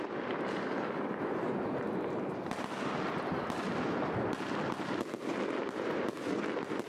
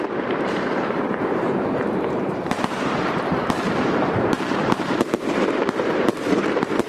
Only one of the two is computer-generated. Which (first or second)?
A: second